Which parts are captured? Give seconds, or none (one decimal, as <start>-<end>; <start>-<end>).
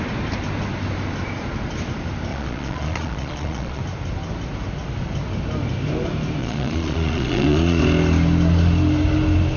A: 0.0-2.3; 3.8-6.4; 7.8-9.6